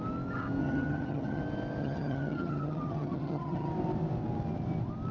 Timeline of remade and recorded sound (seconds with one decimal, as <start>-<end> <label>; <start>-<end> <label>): 0.0-0.6 recorded; 0.6-1.4 remade; 1.4-1.8 recorded; 1.8-3.7 remade; 3.7-5.1 recorded